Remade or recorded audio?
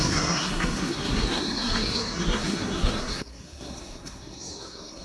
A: remade